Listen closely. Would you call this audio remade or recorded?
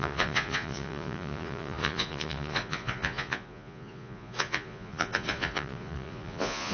remade